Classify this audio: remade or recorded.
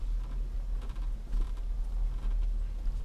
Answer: recorded